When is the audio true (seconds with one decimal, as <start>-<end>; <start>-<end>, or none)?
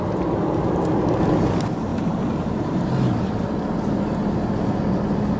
0.0-1.9; 3.4-5.4